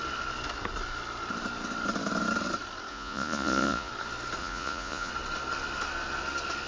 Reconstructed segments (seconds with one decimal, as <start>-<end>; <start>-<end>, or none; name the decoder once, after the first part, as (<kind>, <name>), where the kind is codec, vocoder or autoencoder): 2.9-3.9 (vocoder, Vocos); 4.4-5.1